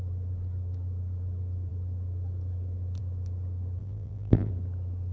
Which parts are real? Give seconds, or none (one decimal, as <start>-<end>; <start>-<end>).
0.0-3.8; 4.5-5.1